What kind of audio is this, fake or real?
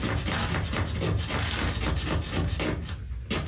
real